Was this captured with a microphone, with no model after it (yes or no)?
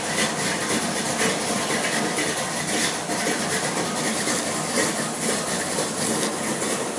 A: yes